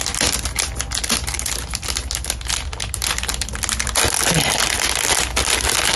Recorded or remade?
recorded